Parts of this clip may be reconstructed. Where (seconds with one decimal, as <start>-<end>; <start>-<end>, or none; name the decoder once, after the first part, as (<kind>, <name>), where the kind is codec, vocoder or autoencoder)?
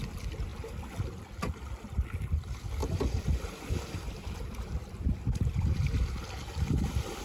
2.8-7.2 (vocoder, BigVGAN v2)